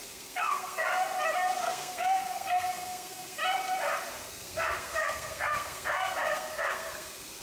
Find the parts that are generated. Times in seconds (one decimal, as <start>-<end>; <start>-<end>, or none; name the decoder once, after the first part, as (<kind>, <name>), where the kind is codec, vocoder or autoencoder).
0.0-0.9 (codec, SNAC); 1.6-3.4; 4.1-7.4